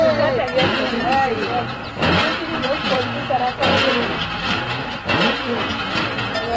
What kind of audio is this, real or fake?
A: real